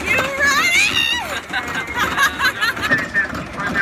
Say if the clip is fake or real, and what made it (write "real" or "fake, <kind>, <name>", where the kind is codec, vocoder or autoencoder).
real